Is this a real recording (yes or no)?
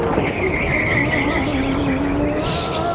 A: yes